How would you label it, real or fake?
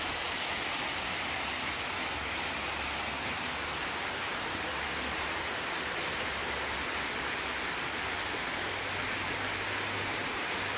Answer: real